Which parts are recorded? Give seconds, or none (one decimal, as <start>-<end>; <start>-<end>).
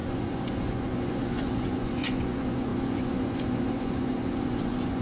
none